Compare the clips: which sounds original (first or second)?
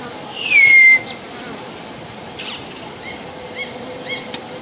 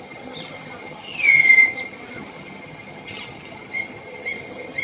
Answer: first